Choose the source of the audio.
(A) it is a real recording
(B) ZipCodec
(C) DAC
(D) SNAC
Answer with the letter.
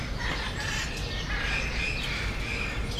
A